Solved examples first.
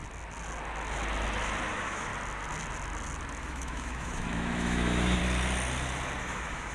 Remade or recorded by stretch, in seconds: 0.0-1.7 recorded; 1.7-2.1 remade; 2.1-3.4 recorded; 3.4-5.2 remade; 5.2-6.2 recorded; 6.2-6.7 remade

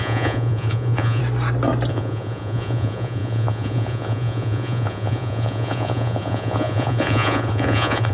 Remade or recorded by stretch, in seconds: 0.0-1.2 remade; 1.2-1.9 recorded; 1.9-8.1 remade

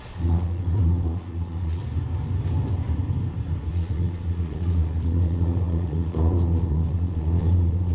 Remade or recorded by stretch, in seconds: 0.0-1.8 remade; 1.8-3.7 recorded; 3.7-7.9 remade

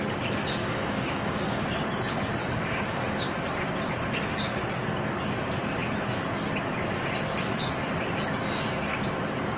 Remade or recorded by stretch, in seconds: 0.0-0.6 recorded; 0.6-1.7 remade; 1.7-2.4 recorded; 2.4-3.2 remade; 3.2-9.6 recorded

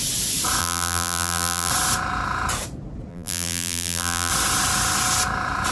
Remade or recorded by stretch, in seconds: 0.0-0.6 recorded; 0.6-1.7 remade; 1.7-3.1 recorded; 3.1-4.3 remade; 4.3-5.7 recorded

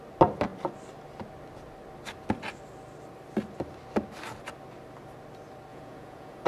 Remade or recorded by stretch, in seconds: 0.0-5.7 recorded; 5.7-6.5 remade